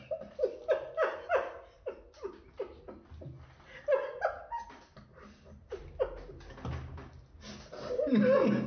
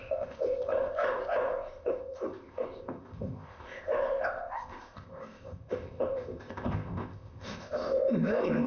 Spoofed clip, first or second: second